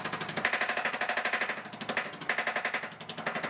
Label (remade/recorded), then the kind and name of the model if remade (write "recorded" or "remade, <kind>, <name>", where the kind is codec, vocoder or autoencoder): recorded